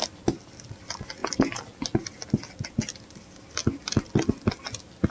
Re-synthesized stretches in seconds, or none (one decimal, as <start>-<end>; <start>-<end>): none